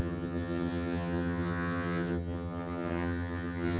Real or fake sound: fake